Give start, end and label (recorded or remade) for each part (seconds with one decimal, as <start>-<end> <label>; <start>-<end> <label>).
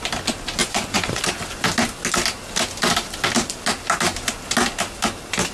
0.0-0.6 recorded; 0.6-1.2 remade; 1.2-5.5 recorded